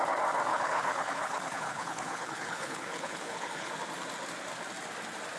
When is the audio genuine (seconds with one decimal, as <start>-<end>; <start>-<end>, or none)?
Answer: 0.0-0.5; 3.7-5.4